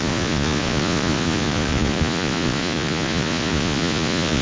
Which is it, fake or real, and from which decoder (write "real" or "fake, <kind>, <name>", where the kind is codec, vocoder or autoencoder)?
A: fake, vocoder, Vocos